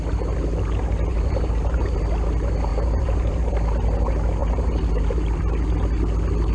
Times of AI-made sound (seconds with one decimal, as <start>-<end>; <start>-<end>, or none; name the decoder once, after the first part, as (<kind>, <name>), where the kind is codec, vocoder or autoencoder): 1.1-2.0 (vocoder, BigVGAN v2); 2.7-3.5; 4.4-5.4